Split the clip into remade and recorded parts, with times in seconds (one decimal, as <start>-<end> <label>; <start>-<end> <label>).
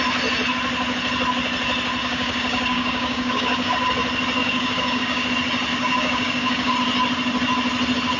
0.0-2.0 recorded; 2.0-3.7 remade; 3.7-4.4 recorded; 4.4-5.3 remade; 5.3-5.7 recorded; 5.7-6.7 remade; 6.7-8.2 recorded